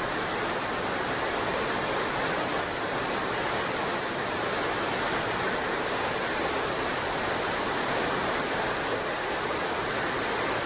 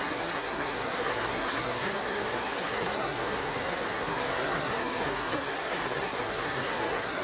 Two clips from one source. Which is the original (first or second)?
first